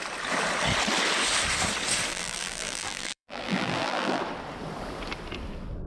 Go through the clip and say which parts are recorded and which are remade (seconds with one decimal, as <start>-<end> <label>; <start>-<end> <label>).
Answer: 0.0-2.1 recorded; 2.1-4.2 remade; 4.2-5.9 recorded